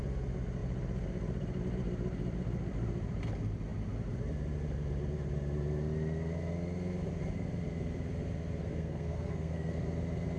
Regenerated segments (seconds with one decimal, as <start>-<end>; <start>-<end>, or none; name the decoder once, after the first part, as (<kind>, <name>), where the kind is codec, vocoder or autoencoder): 8.6-9.8 (codec, SNAC)